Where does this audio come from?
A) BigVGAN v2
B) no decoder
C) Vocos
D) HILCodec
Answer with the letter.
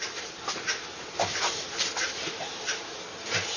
A